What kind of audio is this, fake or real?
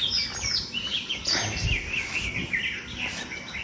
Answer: real